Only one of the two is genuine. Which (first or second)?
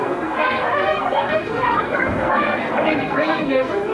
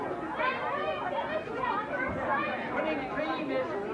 second